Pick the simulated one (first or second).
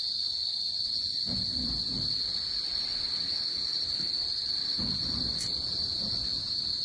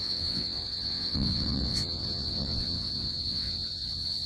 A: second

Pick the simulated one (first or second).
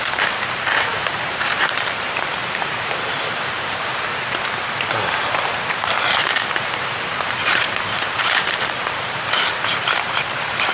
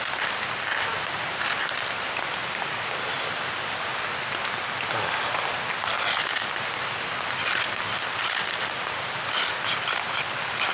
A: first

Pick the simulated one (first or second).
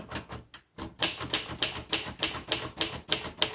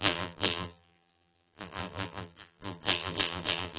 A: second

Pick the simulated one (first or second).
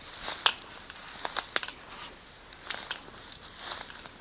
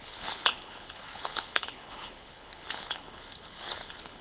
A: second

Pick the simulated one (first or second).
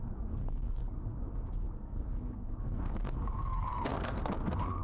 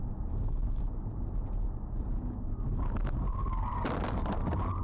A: first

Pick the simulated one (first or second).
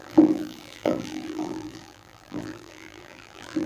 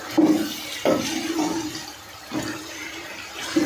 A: first